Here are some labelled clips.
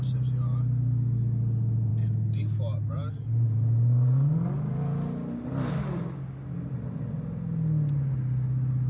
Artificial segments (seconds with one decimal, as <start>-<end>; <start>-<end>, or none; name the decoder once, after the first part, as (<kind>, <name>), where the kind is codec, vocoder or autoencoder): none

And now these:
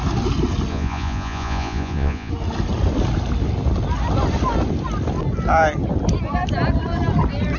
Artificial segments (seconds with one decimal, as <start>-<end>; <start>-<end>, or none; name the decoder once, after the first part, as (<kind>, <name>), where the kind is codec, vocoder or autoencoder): 0.7-2.3 (vocoder, Vocos)

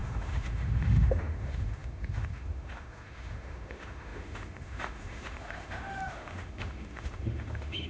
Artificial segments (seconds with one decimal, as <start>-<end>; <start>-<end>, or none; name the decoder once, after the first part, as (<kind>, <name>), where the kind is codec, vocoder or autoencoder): 0.0-7.9 (autoencoder, DAC-VAE)